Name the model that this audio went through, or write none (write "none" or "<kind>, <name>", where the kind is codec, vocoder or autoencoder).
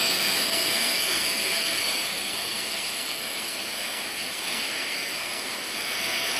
codec, SNAC